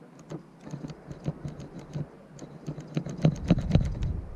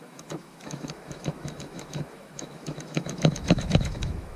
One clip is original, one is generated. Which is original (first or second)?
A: first